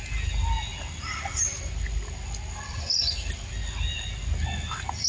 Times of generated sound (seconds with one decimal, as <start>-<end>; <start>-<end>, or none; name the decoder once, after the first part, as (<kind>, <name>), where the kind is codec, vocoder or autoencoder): 0.7-1.7 (vocoder, BigVGAN v2)